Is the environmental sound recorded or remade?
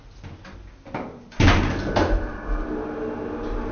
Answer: recorded